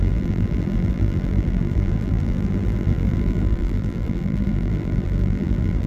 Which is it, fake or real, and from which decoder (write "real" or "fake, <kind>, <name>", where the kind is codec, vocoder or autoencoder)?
fake, vocoder, BigVGAN v2